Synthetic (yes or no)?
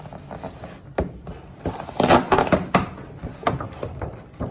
yes